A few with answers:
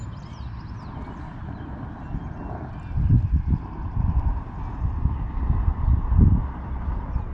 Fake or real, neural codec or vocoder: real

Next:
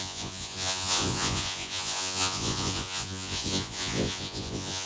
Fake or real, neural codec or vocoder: fake, vocoder, Vocos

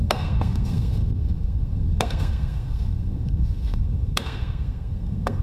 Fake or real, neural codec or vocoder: fake, codec, SNAC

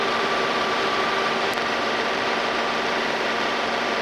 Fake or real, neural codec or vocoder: fake, vocoder, BigVGAN v2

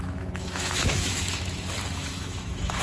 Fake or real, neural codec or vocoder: fake, autoencoder, DAC-VAE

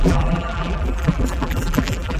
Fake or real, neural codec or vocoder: fake, vocoder, BigVGAN v2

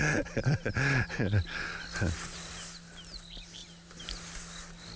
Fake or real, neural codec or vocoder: real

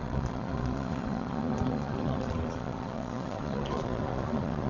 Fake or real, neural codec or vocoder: fake, vocoder, Vocos